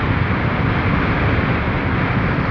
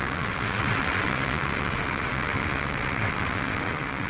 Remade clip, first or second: second